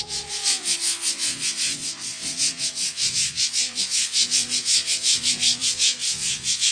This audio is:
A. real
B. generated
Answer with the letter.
B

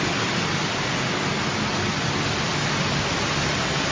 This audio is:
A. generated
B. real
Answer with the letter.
B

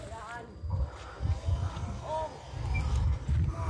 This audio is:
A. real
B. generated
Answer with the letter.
A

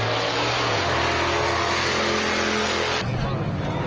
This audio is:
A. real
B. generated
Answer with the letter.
A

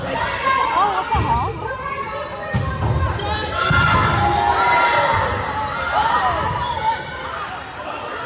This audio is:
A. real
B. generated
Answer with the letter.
A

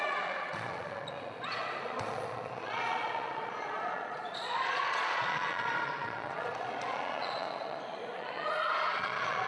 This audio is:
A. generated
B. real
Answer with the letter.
A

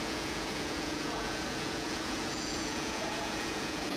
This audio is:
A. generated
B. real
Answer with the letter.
A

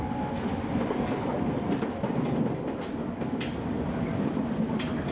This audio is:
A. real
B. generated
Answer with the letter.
A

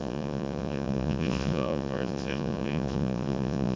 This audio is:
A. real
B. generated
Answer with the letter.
B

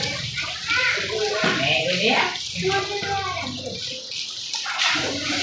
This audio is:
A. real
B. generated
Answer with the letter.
A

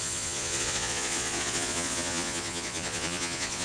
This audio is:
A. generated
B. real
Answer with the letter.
A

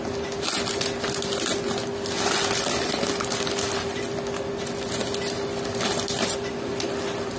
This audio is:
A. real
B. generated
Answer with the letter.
A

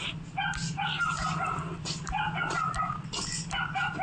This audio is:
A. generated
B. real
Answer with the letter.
B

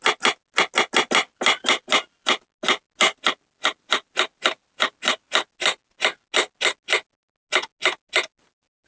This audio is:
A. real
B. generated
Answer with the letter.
A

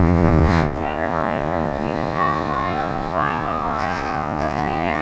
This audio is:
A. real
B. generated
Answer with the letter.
B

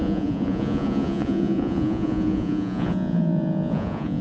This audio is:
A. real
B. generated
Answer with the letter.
B